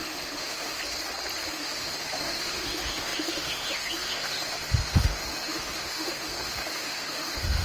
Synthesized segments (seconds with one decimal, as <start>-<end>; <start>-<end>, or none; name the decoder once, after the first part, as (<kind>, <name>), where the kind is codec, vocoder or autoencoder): 0.0-0.8 (autoencoder, DAC-VAE); 1.5-7.6